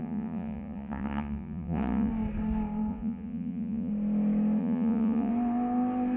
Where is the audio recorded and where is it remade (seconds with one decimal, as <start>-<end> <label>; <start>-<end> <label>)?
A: 0.0-2.1 remade; 2.1-2.9 recorded; 2.9-3.9 remade; 3.9-4.6 recorded; 4.6-5.3 remade; 5.3-6.2 recorded